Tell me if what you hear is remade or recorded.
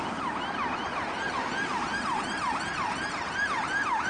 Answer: recorded